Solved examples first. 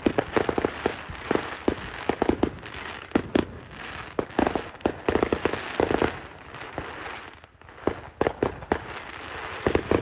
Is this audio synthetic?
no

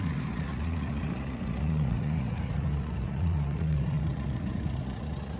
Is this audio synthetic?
yes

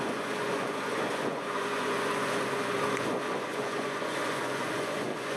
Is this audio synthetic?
yes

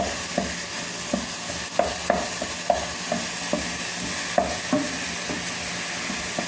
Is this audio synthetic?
no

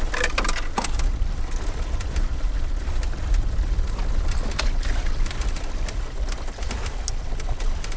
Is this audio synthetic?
no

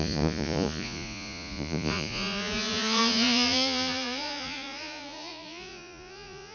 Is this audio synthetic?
yes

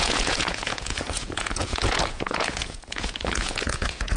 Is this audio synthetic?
yes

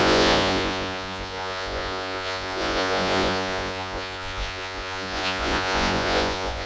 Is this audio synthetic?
yes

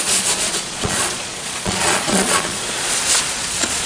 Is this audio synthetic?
yes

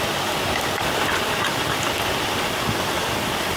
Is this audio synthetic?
no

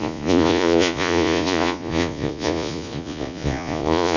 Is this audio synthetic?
yes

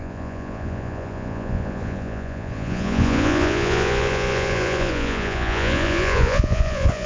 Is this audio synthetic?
yes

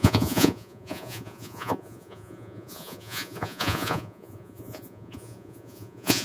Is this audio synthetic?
yes